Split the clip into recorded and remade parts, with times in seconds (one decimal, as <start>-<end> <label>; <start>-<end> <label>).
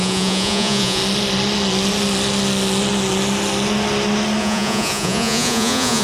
0.0-1.0 remade; 1.0-4.4 recorded; 4.4-6.0 remade